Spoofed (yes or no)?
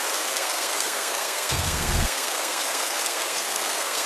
yes